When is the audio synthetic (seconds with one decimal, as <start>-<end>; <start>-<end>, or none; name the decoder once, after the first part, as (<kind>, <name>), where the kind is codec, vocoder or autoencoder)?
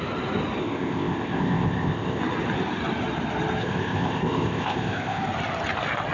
0.6-2.2 (codec, ZipCodec); 3.6-5.2